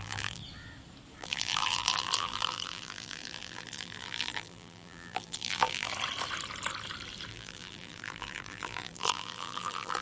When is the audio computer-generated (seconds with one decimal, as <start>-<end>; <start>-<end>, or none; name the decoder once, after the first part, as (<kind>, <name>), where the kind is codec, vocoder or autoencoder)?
0.0-0.4 (vocoder, BigVGAN v2); 1.2-5.9; 7.3-10.0